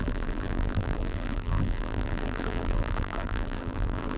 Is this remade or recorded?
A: remade